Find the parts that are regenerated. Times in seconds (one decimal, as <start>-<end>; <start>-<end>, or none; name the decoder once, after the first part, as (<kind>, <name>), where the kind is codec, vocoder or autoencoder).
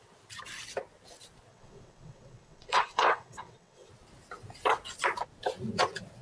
1.5-3.9 (vocoder, WaveNeXt)